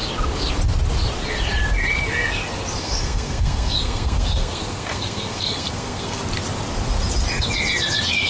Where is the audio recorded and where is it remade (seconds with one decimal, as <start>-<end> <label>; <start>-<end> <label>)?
0.0-2.8 recorded; 2.8-6.2 remade; 6.2-8.3 recorded